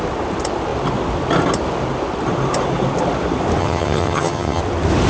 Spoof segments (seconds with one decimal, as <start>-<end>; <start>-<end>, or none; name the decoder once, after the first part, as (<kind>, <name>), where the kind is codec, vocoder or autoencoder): 3.6-4.6 (vocoder, HiFi-GAN)

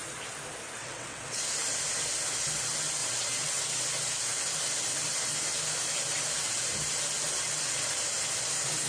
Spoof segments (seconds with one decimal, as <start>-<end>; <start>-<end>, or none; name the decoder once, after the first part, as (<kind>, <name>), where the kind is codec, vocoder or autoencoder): 0.8-1.4 (vocoder, WaveNeXt); 3.0-3.6